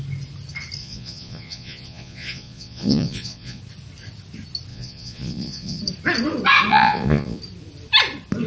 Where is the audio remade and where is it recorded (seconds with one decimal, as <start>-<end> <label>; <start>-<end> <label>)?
0.0-0.8 recorded; 0.8-3.6 remade; 3.6-4.7 recorded; 4.7-5.8 remade; 5.8-6.7 recorded; 6.7-7.4 remade; 7.4-8.5 recorded